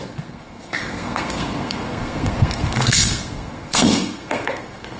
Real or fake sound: fake